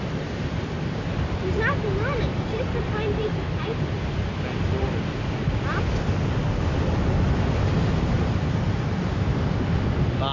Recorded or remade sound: recorded